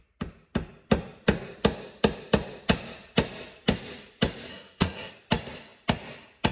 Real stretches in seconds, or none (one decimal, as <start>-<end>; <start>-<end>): 0.0-4.5; 5.1-6.5